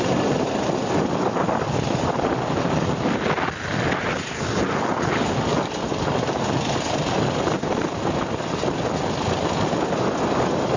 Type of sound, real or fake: real